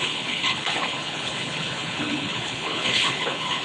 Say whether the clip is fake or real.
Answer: fake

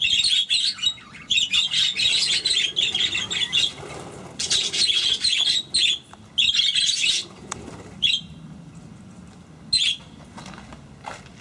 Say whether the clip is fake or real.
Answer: real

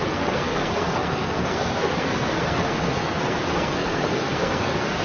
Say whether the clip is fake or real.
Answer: fake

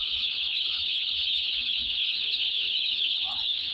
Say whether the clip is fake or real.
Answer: fake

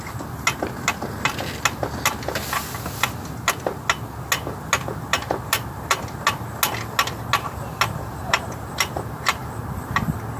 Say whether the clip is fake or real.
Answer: real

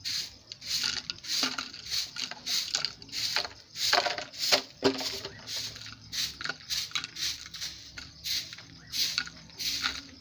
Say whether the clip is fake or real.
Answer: real